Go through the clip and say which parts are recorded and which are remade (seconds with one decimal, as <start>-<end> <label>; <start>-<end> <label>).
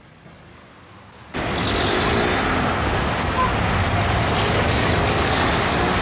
0.0-0.6 remade; 0.6-3.0 recorded; 3.0-3.5 remade; 3.5-4.4 recorded; 4.4-6.0 remade